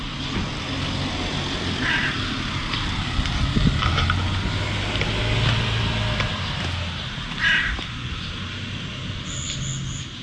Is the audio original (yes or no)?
yes